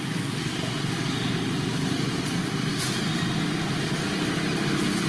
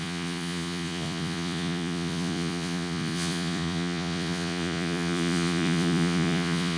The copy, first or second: second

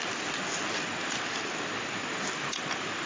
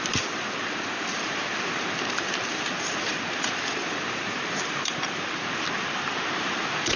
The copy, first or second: second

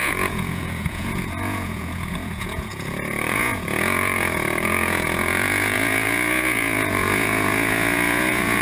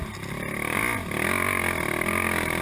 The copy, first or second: first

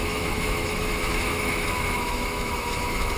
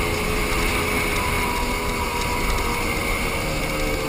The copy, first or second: first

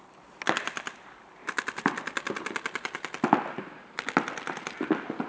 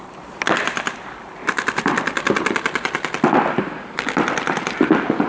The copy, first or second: second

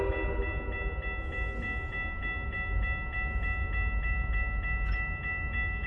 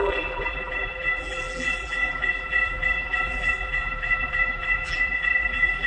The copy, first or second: second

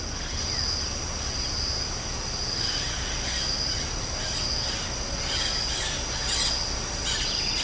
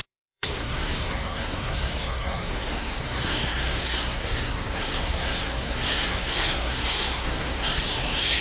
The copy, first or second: second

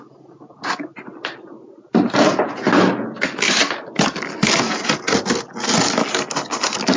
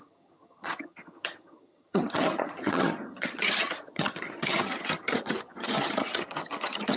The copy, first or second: second